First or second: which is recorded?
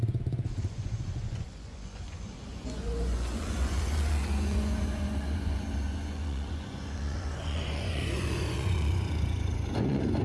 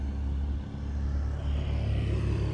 second